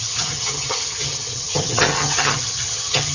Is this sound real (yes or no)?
no